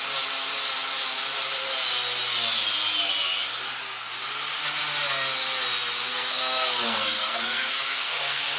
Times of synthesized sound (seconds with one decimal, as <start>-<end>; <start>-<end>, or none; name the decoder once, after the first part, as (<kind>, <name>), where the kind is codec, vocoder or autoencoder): 6.0-8.6 (codec, SNAC)